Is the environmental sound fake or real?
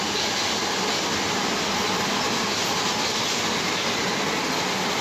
real